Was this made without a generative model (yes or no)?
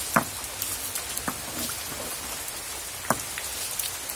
yes